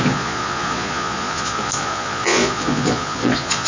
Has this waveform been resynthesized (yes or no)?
yes